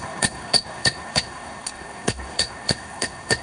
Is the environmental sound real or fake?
fake